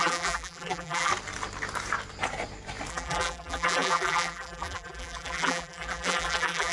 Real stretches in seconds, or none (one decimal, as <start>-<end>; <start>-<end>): 1.1-2.9